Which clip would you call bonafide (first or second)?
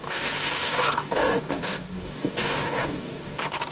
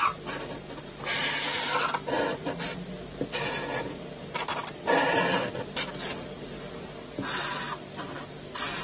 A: second